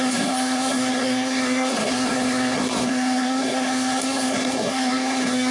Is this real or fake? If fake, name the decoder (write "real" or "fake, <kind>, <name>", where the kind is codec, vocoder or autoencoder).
fake, codec, SNAC